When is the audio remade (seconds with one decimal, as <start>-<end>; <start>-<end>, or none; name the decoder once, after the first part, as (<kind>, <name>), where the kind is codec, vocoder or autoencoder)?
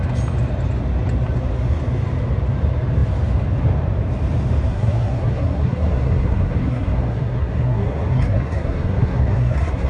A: 4.7-9.9 (codec, SNAC)